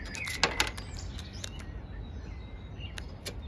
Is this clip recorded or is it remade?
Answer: recorded